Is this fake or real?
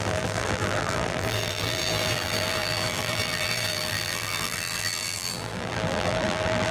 fake